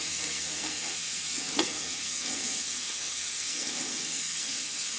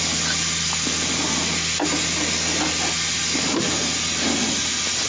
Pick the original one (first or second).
second